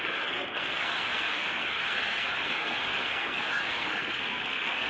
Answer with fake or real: fake